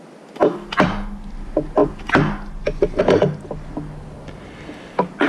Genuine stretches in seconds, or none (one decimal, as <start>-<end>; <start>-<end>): 0.0-5.3